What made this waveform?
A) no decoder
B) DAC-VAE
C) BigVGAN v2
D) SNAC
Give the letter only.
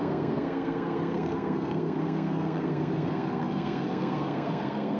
D